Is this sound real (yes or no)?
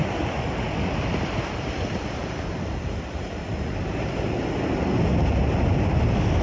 yes